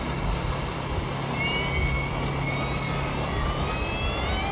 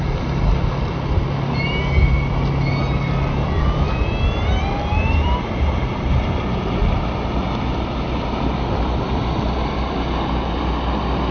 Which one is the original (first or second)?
first